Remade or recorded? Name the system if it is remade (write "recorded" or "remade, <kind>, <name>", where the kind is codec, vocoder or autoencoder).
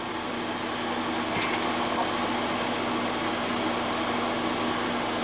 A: recorded